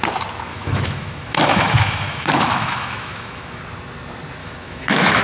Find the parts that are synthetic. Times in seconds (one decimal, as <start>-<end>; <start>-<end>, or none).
0.5-3.6; 4.4-5.2